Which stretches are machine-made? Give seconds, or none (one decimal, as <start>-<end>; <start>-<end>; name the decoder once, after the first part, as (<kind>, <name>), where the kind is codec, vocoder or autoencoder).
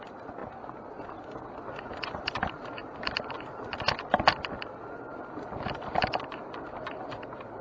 none